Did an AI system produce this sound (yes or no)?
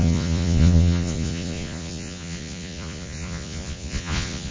yes